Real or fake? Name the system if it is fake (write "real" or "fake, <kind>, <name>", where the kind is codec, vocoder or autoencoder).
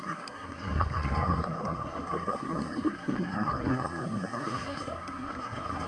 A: fake, codec, SNAC